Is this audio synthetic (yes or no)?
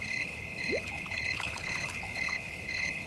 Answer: yes